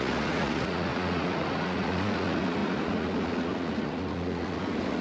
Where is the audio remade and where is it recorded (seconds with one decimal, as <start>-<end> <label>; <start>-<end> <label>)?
0.0-5.0 remade